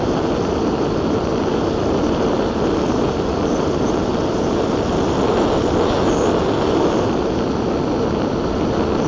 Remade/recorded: recorded